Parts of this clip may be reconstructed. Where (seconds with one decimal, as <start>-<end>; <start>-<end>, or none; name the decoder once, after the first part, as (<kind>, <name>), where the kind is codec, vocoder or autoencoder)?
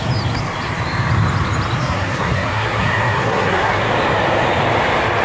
1.8-3.9 (codec, SNAC)